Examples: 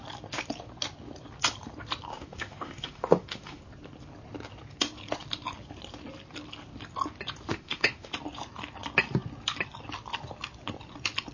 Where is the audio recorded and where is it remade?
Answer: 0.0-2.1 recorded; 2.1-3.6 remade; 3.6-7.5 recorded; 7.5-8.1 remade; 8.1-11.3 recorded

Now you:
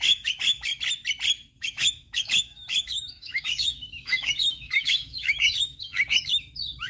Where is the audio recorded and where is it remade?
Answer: 0.0-0.7 remade; 0.7-1.6 recorded; 1.6-6.9 remade

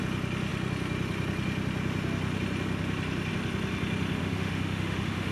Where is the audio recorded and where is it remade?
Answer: 0.0-4.2 recorded; 4.2-5.3 remade

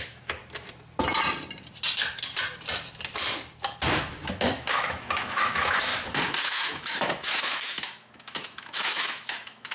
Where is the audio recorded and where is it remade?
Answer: 0.0-0.4 remade; 0.4-4.3 recorded; 4.3-5.9 remade; 5.9-6.4 recorded; 6.4-9.7 remade

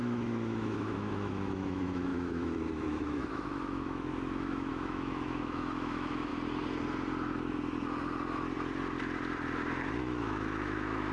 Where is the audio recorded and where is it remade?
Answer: 0.0-6.3 remade; 6.3-10.0 recorded; 10.0-11.1 remade

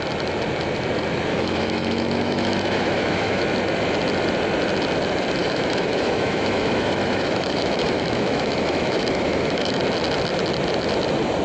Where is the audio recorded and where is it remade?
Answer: 0.0-1.3 recorded; 1.3-3.4 remade; 3.4-5.4 recorded; 5.4-9.8 remade; 9.8-11.4 recorded

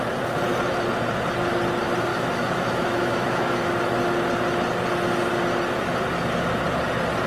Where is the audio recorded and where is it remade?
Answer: 0.0-2.1 recorded; 2.1-3.7 remade; 3.7-7.3 recorded

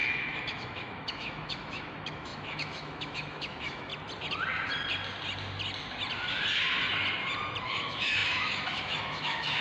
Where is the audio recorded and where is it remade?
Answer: 0.0-3.9 remade; 3.9-7.6 recorded; 7.6-9.6 remade